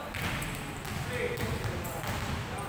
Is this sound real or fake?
real